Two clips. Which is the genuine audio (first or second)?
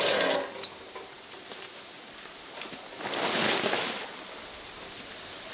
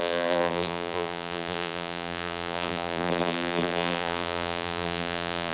first